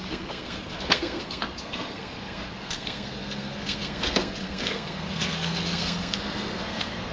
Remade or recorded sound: remade